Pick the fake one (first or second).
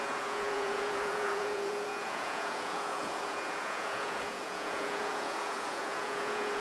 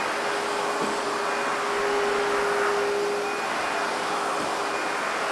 first